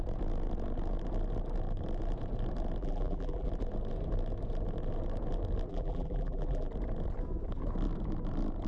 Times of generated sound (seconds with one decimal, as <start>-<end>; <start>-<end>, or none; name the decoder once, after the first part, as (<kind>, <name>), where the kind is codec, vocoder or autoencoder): 2.8-3.5 (vocoder, BigVGAN v2); 5.7-6.7